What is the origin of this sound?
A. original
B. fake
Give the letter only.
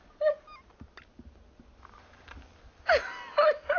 A